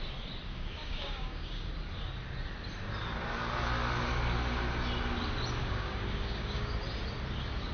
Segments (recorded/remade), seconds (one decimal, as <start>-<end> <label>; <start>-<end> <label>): 0.0-0.5 recorded; 0.5-1.7 remade; 1.7-5.6 recorded; 5.6-6.7 remade; 6.7-7.7 recorded